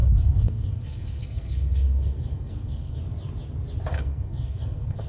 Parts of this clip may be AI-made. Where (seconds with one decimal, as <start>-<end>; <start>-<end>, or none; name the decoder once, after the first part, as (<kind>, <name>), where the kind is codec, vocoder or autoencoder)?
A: 0.0-3.0 (codec, SNAC); 3.9-5.1